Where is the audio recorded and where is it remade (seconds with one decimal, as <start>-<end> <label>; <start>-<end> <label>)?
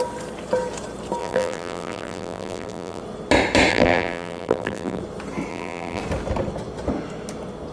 0.0-1.2 recorded; 1.2-3.0 remade; 3.0-3.7 recorded; 3.7-5.0 remade; 5.0-5.5 recorded; 5.5-6.0 remade; 6.0-7.7 recorded